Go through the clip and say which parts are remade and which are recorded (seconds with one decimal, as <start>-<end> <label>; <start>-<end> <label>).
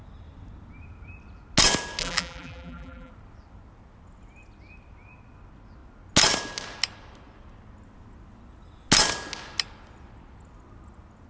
0.0-2.0 recorded; 2.0-3.1 remade; 3.1-11.3 recorded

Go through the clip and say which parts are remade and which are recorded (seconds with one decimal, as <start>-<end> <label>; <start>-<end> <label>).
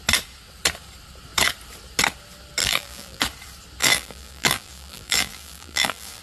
0.0-2.6 recorded; 2.6-3.2 remade; 3.2-3.8 recorded; 3.8-6.2 remade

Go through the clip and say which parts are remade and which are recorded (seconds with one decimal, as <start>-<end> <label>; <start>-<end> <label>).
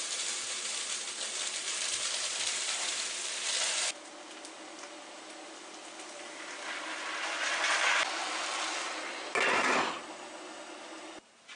0.0-1.6 recorded; 1.6-3.5 remade; 3.5-5.8 recorded; 5.8-10.0 remade; 10.0-11.6 recorded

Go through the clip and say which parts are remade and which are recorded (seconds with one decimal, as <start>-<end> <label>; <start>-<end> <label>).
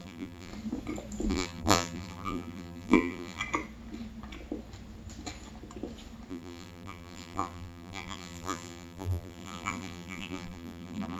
0.0-0.5 remade; 0.5-1.3 recorded; 1.3-3.4 remade; 3.4-6.3 recorded; 6.3-11.2 remade